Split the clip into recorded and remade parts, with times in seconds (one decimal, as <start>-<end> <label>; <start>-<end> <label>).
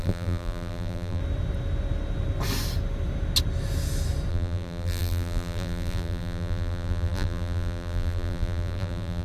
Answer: 0.0-1.2 remade; 1.2-4.3 recorded; 4.3-9.2 remade